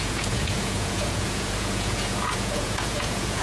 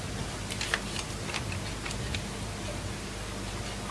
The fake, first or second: first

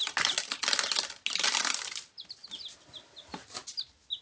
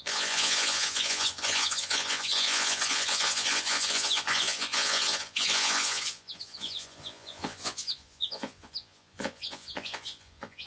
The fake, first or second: second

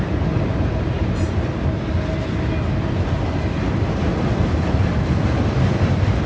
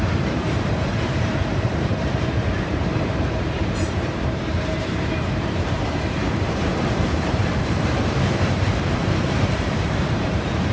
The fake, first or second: second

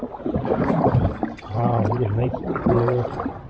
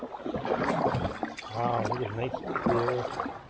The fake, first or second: first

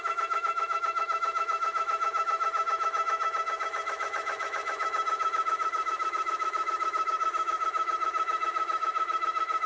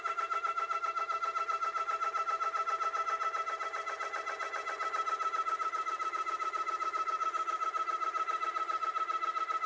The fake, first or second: first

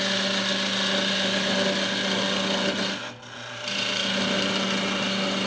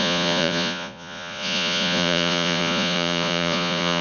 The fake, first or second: second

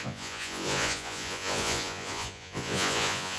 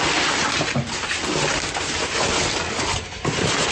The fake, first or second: first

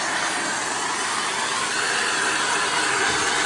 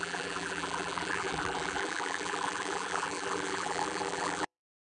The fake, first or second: second